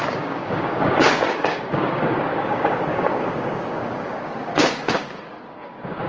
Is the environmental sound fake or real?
fake